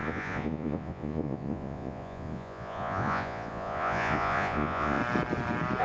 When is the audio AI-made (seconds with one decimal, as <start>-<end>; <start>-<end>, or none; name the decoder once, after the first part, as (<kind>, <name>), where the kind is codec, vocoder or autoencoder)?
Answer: 0.0-5.0 (vocoder, Vocos)